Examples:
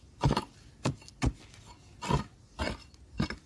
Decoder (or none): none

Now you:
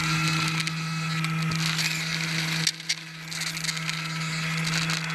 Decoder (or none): none